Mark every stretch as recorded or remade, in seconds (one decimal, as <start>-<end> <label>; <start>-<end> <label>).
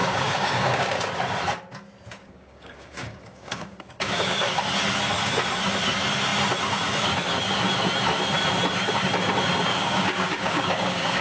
0.0-0.9 remade; 0.9-2.2 recorded; 2.2-4.5 remade; 4.5-9.7 recorded; 9.7-11.2 remade